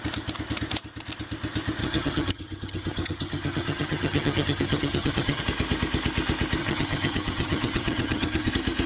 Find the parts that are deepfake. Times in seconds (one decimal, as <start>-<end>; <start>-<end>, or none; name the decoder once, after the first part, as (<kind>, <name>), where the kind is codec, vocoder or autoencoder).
1.8-5.4 (vocoder, HiFi-GAN); 6.6-8.5